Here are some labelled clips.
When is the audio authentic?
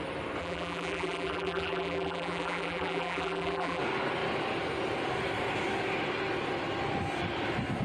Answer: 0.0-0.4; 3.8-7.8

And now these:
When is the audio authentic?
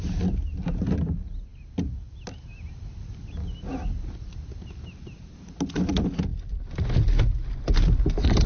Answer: 0.0-8.5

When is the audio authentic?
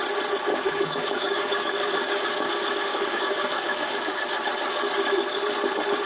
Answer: 0.0-0.5; 2.5-2.9; 4.2-6.1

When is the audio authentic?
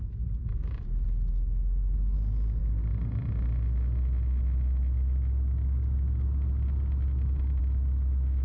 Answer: 0.0-8.4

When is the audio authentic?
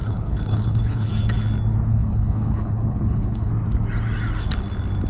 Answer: 1.1-1.9; 3.5-5.1